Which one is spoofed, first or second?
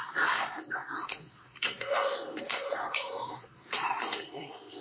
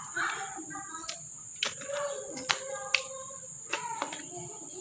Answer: first